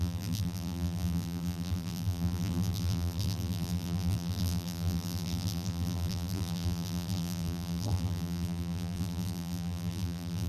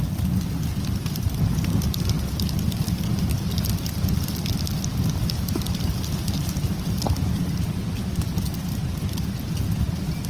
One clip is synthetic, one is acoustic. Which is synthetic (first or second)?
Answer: first